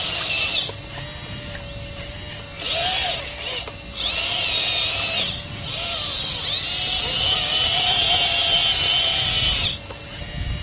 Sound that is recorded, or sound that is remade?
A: recorded